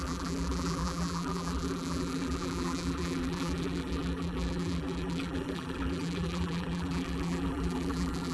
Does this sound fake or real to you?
fake